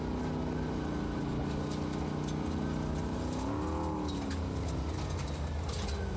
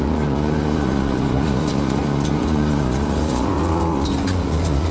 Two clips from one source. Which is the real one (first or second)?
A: first